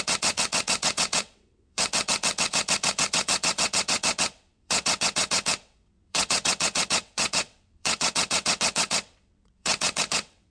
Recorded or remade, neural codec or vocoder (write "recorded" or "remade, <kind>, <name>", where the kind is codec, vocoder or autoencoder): remade, vocoder, WaveNeXt